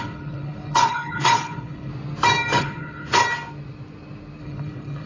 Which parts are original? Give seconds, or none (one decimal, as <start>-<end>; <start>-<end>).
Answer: 1.9-2.6; 3.2-4.4